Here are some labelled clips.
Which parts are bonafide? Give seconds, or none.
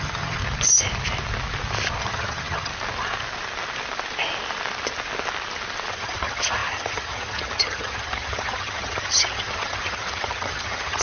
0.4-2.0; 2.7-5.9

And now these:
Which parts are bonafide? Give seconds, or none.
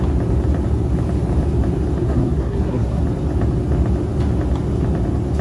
0.0-2.0; 3.0-5.4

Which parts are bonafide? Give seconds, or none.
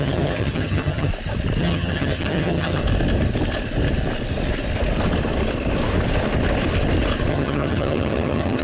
1.1-1.6; 2.8-7.3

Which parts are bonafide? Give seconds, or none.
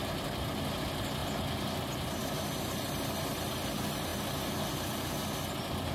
0.0-5.9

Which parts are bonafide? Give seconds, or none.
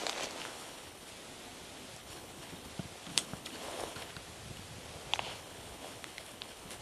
0.0-0.4; 1.1-2.0; 2.7-3.1; 4.1-5.3